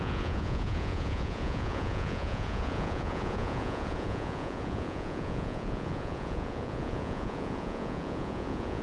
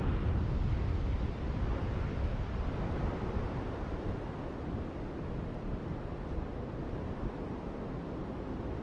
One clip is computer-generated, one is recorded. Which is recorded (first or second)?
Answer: second